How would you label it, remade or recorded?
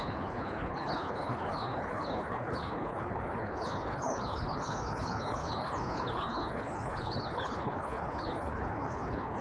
remade